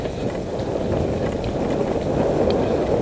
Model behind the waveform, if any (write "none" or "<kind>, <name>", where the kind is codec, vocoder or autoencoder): none